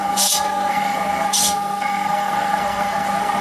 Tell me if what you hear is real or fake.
fake